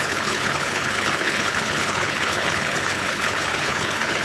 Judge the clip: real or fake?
fake